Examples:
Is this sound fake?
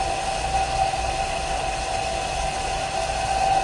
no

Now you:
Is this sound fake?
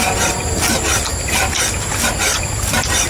no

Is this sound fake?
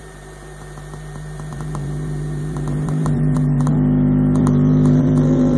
yes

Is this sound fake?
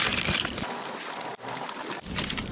yes